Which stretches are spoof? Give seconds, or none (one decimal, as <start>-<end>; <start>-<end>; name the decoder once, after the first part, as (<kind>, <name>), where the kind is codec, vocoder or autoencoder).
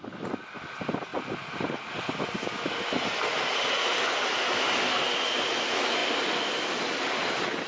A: none